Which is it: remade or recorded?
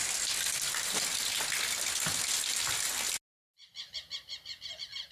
recorded